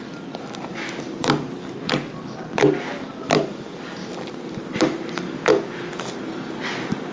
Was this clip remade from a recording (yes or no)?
yes